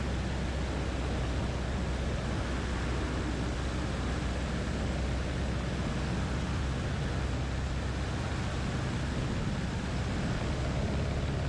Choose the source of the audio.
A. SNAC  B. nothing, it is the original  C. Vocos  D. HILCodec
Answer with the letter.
B